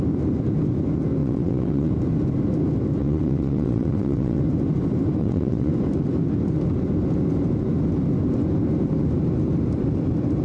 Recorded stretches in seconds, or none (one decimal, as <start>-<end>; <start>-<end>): 0.0-1.2; 1.9-3.0; 4.4-5.2; 5.7-10.4